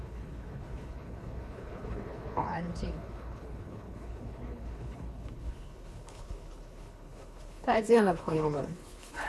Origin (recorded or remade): remade